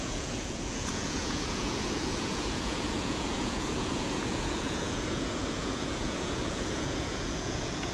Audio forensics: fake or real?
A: fake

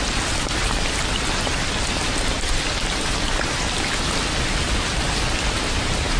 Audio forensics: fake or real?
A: real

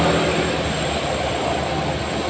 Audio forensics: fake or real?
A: real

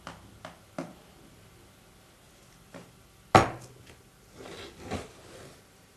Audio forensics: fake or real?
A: real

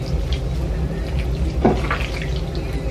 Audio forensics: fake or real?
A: real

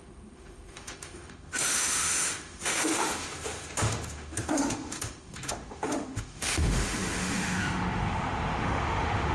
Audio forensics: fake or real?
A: fake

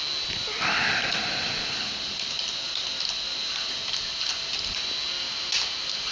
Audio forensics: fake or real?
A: real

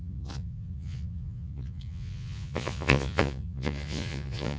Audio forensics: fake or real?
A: fake